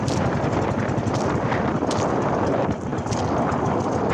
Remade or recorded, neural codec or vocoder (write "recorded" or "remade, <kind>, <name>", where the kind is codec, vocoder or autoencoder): recorded